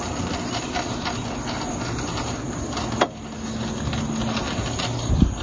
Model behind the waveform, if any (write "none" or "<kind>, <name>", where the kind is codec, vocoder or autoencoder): none